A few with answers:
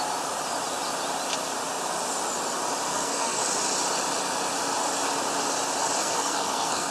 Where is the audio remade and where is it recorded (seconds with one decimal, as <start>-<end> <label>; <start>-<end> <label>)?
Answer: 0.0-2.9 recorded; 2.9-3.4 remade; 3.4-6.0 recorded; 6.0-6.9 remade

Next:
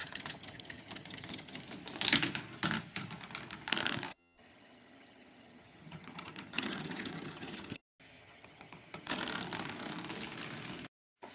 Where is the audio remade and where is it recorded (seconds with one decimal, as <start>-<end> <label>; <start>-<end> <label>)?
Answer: 0.0-1.6 remade; 1.6-4.1 recorded; 4.1-7.8 remade; 7.8-8.2 recorded; 8.2-9.2 remade; 9.2-11.3 recorded

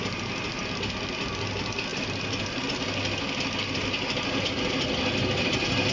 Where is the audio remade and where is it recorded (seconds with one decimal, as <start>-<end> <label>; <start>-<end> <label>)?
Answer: 0.0-5.9 recorded